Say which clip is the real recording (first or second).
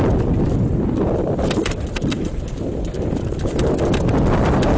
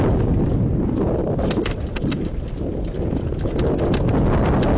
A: second